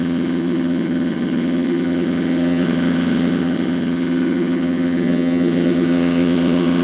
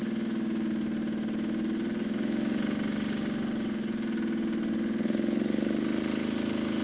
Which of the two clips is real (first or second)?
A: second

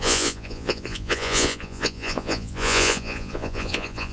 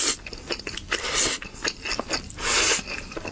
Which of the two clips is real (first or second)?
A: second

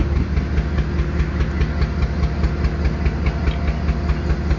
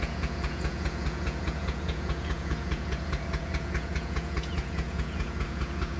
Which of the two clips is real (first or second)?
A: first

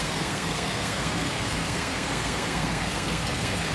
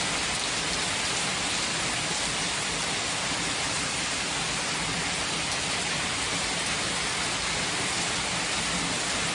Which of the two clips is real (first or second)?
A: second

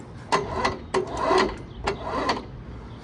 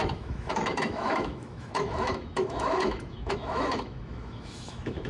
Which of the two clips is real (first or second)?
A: first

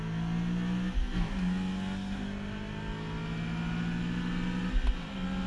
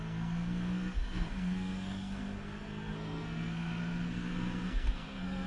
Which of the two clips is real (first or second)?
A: first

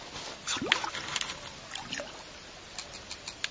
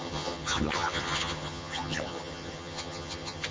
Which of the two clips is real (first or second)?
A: first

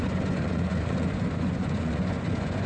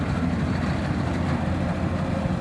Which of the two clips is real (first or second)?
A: second